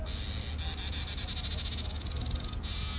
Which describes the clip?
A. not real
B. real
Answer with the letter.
B